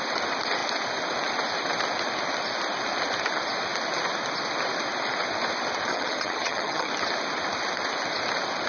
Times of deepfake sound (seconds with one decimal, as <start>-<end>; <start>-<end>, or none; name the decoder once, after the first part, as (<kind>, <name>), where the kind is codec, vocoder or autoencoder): 5.9-6.9 (vocoder, HiFi-GAN)